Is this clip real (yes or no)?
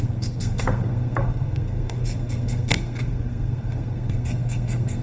no